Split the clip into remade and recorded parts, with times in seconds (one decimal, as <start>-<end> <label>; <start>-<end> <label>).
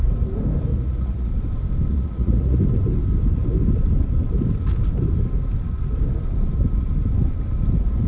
0.0-0.7 recorded; 0.7-1.3 remade; 1.3-1.9 recorded; 1.9-2.6 remade; 2.6-8.1 recorded